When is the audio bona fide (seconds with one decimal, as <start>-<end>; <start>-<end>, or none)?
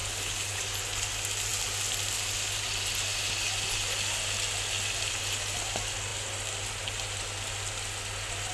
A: 0.6-8.5